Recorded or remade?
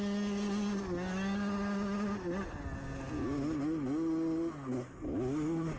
recorded